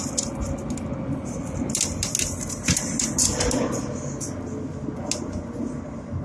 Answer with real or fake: real